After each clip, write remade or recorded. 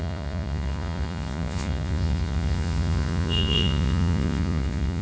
remade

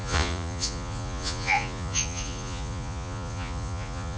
remade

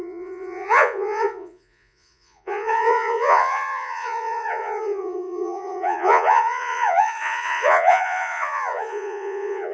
remade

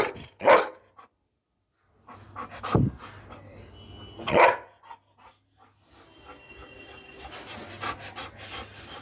recorded